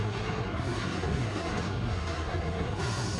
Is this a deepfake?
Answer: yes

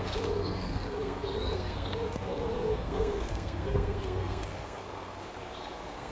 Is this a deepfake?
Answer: yes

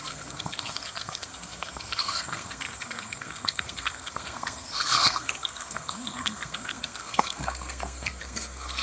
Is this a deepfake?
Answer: yes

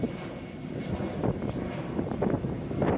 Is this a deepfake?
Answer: no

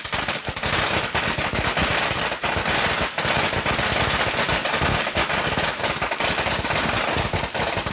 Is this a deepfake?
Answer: no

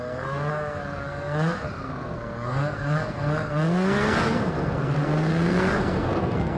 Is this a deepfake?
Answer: yes